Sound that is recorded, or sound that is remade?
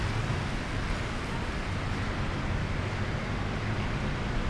recorded